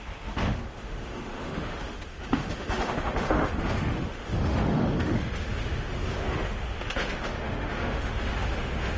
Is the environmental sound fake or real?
fake